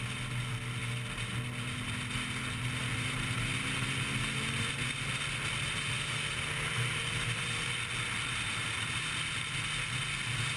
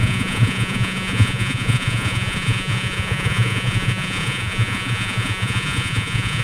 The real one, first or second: first